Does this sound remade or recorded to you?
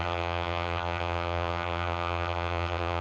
remade